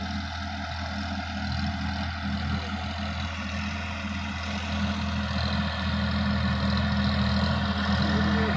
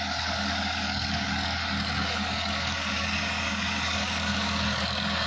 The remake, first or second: second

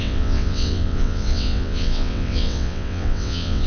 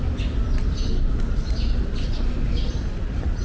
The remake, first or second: first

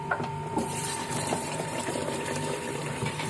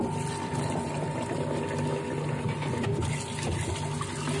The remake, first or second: first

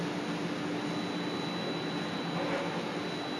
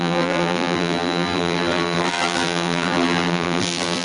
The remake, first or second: second